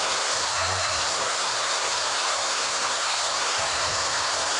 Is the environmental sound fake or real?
fake